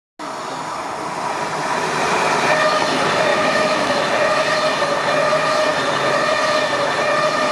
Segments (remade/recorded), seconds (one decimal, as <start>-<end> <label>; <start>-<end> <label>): 0.0-3.3 recorded; 3.3-4.0 remade; 4.0-7.5 recorded